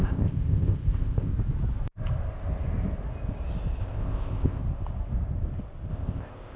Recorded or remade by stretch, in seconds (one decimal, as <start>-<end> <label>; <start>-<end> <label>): 0.0-1.3 remade; 1.3-3.8 recorded; 3.8-4.6 remade; 4.6-5.9 recorded; 5.9-6.6 remade